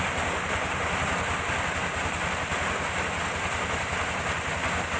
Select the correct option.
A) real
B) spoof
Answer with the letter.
A